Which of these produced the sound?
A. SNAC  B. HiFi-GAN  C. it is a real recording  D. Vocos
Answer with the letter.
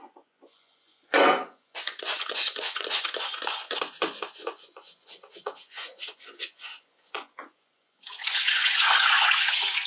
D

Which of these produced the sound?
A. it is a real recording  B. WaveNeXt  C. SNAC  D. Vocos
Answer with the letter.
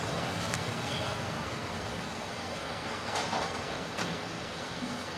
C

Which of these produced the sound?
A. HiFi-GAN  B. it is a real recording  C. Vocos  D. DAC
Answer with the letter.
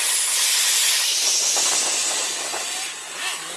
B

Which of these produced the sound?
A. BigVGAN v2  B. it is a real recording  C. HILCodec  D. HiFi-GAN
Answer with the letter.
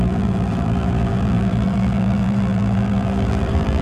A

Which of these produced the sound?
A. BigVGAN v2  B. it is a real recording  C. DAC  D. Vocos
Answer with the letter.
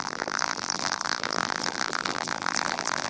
A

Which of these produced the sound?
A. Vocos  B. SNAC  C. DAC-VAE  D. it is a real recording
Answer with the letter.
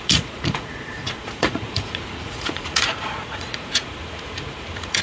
A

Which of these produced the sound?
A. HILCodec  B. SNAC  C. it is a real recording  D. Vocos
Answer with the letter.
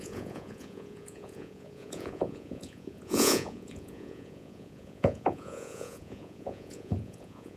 D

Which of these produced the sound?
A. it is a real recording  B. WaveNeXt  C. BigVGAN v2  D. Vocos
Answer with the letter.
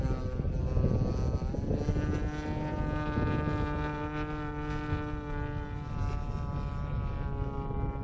A